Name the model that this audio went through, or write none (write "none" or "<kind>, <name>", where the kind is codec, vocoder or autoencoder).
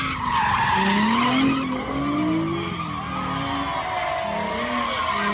none